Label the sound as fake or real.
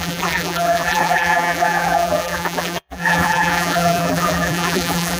fake